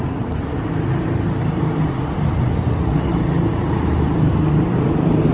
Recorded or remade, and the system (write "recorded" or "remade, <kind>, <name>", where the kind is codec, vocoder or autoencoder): recorded